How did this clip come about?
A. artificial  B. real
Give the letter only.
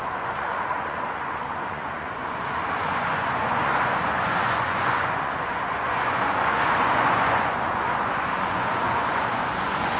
A